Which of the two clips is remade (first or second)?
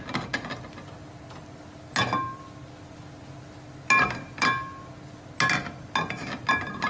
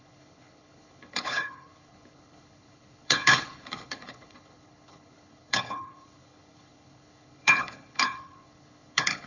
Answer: second